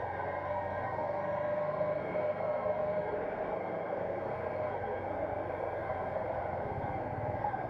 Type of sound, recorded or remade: remade